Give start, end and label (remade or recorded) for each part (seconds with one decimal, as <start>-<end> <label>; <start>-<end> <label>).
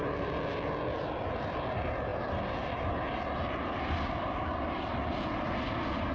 0.0-6.1 recorded